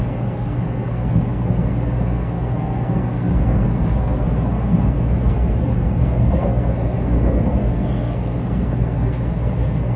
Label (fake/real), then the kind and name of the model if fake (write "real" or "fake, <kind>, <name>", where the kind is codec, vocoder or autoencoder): fake, codec, SNAC